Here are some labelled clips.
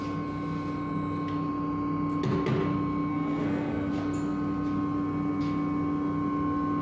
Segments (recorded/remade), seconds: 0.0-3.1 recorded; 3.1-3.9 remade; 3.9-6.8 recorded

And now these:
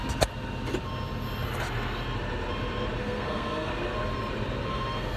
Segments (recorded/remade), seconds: 0.0-3.0 recorded; 3.0-3.7 remade; 3.7-4.7 recorded; 4.7-5.2 remade

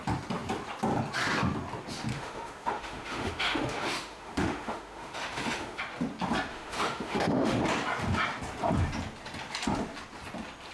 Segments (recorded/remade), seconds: 0.0-2.1 recorded; 2.1-5.8 remade; 5.8-6.5 recorded; 6.5-7.6 remade; 7.6-10.7 recorded

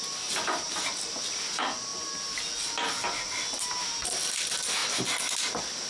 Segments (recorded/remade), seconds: 0.0-5.9 recorded

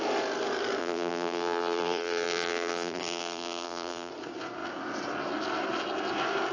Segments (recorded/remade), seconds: 0.0-0.8 recorded; 0.8-4.1 remade; 4.1-6.5 recorded

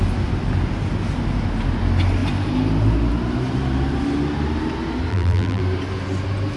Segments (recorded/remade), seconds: 0.0-5.1 recorded; 5.1-5.6 remade; 5.6-6.6 recorded

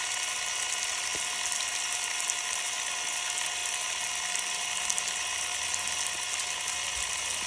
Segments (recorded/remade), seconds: 0.0-7.5 recorded

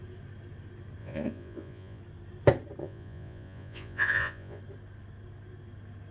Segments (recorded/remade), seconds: 0.0-1.0 recorded; 1.0-2.0 remade; 2.0-2.8 recorded; 2.8-4.6 remade; 4.6-6.1 recorded